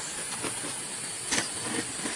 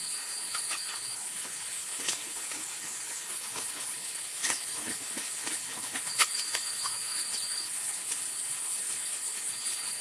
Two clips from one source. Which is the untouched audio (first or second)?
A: first